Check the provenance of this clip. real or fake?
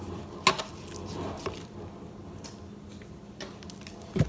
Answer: real